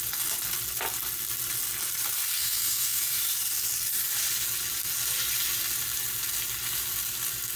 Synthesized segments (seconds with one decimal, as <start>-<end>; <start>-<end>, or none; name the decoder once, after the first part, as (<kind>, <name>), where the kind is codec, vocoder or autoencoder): 2.3-3.0 (codec, SNAC)

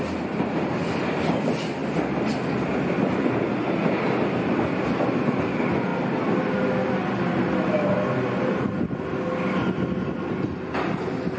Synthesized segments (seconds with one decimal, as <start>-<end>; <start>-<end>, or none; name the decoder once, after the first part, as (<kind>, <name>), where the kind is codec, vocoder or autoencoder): none

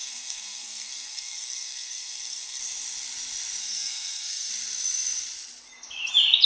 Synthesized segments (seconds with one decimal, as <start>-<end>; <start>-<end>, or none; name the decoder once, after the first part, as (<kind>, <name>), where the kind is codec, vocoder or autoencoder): 0.0-2.6 (codec, SNAC); 3.6-4.5

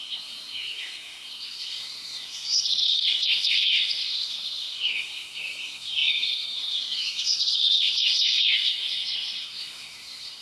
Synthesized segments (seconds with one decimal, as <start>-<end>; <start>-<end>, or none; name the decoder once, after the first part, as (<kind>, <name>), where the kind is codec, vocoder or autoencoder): 0.0-10.4 (codec, SNAC)

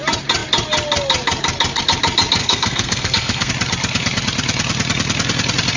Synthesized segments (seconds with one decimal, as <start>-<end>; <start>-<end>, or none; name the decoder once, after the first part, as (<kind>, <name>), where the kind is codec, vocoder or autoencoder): 2.4-3.5 (codec, SNAC)

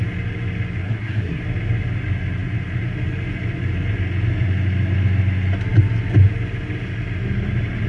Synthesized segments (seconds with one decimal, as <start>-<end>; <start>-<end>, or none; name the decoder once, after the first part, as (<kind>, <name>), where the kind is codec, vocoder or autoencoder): 0.8-1.4 (codec, SNAC)

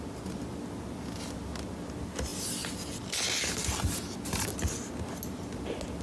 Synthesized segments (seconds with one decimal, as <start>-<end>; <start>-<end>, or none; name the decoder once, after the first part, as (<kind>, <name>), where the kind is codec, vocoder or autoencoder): none